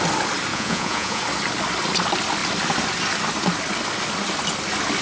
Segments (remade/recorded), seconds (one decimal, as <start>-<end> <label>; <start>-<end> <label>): 0.0-0.5 recorded; 0.5-1.2 remade; 1.2-5.0 recorded